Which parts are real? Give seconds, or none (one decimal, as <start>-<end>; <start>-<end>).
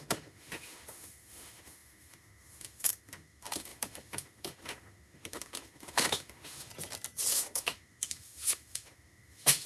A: 6.7-7.3